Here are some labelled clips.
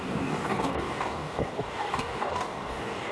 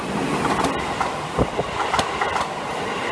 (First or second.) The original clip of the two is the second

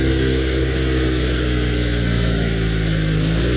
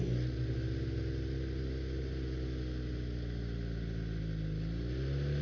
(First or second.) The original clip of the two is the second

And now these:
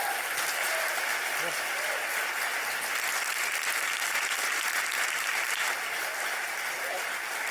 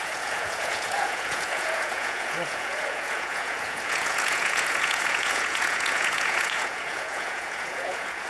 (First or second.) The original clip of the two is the first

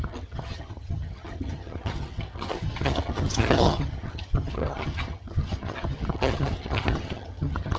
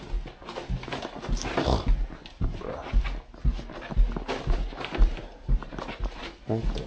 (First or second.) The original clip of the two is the second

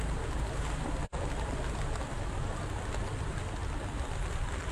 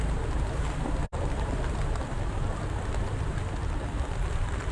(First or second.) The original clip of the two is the first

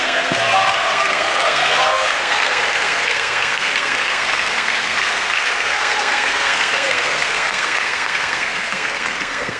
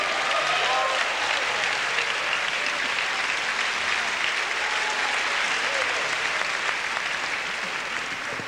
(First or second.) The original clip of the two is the second